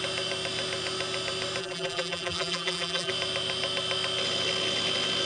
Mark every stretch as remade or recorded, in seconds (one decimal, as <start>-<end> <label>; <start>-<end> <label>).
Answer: 0.0-1.6 recorded; 1.6-3.1 remade; 3.1-5.2 recorded